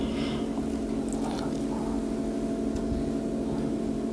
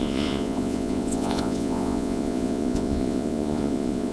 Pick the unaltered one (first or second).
first